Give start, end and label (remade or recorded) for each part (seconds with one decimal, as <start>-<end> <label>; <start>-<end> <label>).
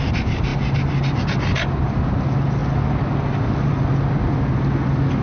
0.0-5.2 recorded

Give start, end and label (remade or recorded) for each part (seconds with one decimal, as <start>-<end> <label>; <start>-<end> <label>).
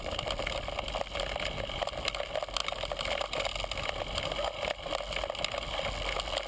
0.0-6.5 recorded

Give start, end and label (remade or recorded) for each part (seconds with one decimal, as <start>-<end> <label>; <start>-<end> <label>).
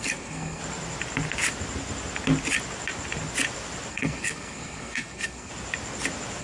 0.0-0.6 remade; 0.6-3.9 recorded; 3.9-5.5 remade; 5.5-6.4 recorded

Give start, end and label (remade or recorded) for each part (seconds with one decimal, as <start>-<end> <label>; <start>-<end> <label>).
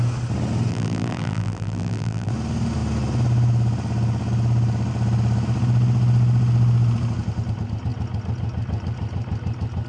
0.0-0.7 recorded; 0.7-2.3 remade; 2.3-9.9 recorded